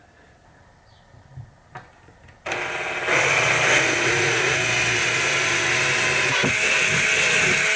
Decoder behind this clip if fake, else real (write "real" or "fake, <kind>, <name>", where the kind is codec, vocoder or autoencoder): real